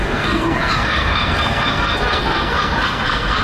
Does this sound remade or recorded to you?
remade